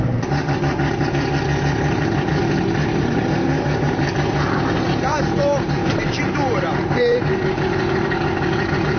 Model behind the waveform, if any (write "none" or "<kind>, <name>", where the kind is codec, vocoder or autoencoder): vocoder, BigVGAN v2